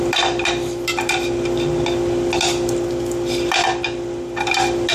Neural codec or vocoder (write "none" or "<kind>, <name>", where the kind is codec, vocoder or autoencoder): vocoder, BigVGAN v2